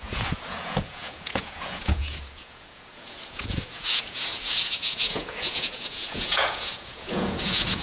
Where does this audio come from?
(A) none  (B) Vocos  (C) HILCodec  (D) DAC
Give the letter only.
B